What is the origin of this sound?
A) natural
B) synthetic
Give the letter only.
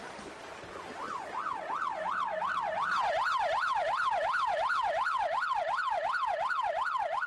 A